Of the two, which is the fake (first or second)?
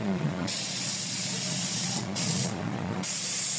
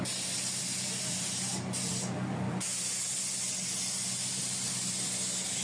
first